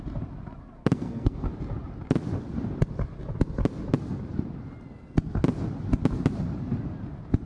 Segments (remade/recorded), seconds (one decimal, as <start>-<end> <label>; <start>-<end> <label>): 0.0-0.8 recorded; 0.8-1.5 remade; 1.5-7.5 recorded